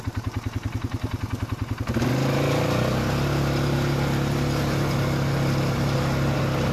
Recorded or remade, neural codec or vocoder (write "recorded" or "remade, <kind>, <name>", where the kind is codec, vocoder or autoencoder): recorded